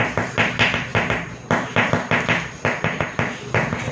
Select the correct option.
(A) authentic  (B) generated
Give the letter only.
A